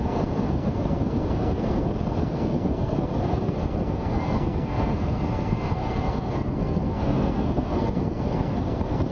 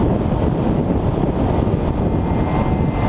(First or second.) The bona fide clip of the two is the second